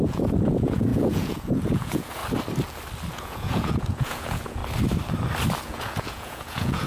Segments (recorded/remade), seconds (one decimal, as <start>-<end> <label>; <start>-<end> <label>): 0.0-2.2 remade; 2.2-3.1 recorded; 3.1-4.6 remade; 4.6-5.6 recorded; 5.6-6.9 remade